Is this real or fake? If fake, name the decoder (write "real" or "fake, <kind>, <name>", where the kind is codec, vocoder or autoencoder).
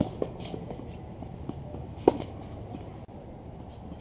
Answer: real